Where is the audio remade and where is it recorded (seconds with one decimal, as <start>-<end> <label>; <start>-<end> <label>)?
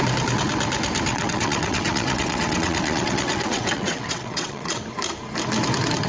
0.0-1.1 recorded; 1.1-4.8 remade; 4.8-6.1 recorded